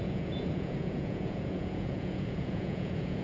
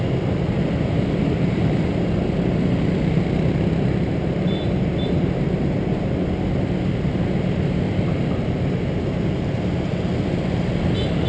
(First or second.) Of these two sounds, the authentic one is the second